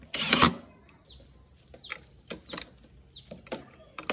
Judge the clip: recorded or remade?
recorded